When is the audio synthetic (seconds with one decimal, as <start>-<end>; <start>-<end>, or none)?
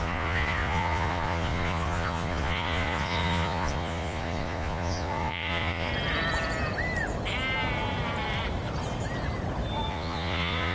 0.0-5.9; 9.9-10.7